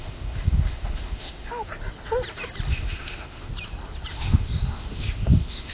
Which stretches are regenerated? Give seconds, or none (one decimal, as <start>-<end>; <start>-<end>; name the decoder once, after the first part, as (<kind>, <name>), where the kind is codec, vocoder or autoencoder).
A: 0.0-1.7 (autoencoder, DAC-VAE); 2.7-3.5; 4.1-5.7